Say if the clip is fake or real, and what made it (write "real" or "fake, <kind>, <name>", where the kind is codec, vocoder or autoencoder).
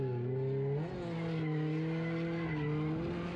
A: real